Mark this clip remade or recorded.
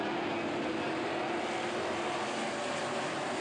recorded